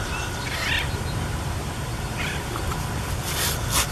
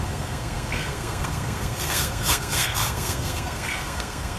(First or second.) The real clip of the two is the first